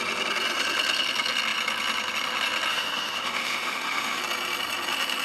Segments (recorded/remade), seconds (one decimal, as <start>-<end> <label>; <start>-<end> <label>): 0.0-2.7 recorded; 2.7-4.2 remade; 4.2-5.2 recorded

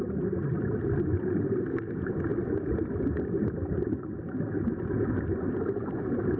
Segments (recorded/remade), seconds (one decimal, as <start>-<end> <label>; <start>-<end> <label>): 0.0-6.4 recorded

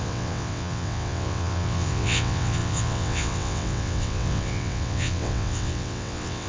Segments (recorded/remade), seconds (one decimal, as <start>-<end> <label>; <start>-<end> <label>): 0.0-6.5 remade